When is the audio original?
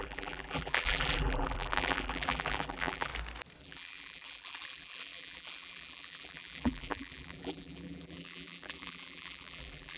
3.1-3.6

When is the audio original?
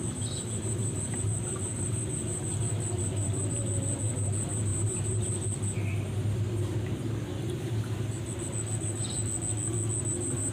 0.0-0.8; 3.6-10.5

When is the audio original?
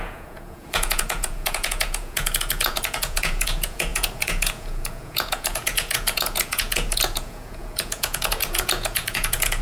none